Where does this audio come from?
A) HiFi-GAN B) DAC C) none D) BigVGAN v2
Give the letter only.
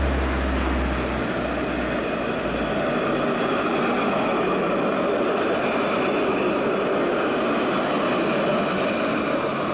C